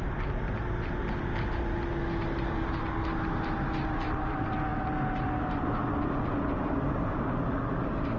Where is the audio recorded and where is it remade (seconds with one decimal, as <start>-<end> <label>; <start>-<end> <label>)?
0.0-8.2 recorded